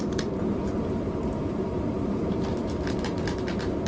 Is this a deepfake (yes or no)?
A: yes